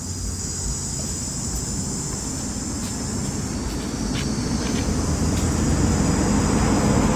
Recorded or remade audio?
recorded